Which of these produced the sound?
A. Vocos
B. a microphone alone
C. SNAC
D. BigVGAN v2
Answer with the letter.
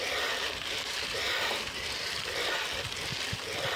B